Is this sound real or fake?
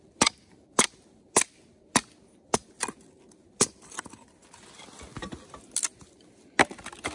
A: real